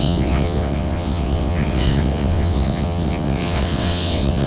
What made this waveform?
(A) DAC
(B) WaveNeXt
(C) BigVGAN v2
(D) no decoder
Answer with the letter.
B